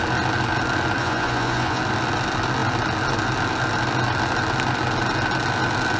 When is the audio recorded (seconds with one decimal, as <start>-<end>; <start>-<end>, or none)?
0.0-1.0; 1.8-6.0

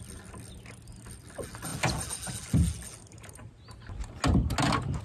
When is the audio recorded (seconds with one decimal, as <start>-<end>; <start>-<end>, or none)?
0.0-5.0

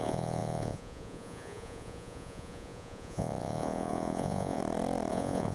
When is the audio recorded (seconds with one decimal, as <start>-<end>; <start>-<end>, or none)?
4.6-5.1

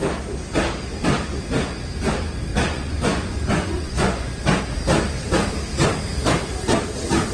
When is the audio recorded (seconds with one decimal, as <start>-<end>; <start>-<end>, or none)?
0.0-2.5; 4.6-7.3

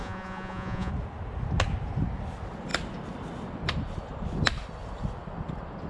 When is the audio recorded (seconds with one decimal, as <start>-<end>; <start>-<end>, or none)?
0.9-5.9